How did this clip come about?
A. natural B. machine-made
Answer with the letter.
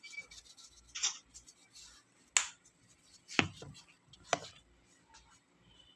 A